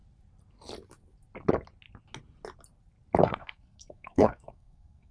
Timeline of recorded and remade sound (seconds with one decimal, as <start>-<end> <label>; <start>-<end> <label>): 0.0-3.2 recorded; 3.2-5.1 remade